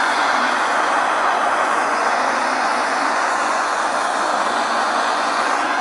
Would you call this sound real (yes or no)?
no